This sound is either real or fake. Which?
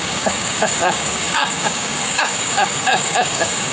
fake